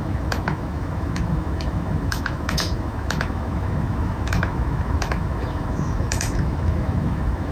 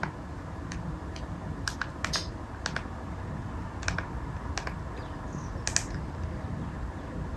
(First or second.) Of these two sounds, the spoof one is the first